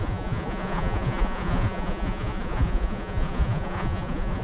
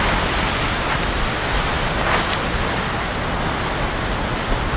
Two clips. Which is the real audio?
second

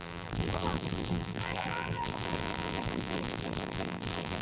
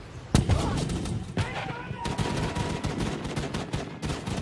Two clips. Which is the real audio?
second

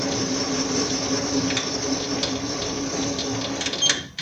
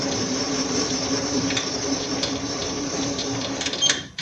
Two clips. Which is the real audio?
first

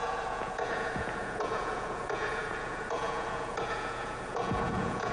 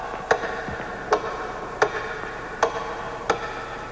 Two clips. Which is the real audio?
second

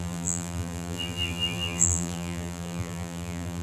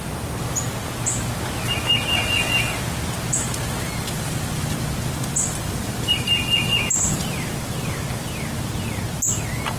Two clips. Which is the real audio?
second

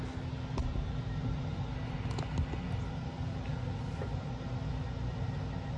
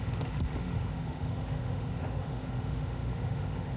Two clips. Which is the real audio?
first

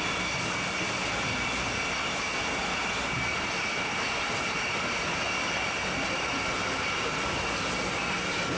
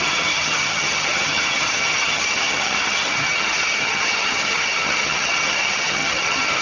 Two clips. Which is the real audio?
first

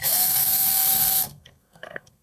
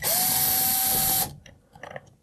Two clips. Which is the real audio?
second